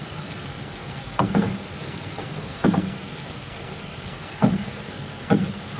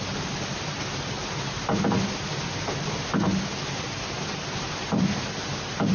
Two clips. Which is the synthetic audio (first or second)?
first